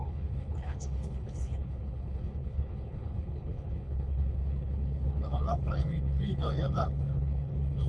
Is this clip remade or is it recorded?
remade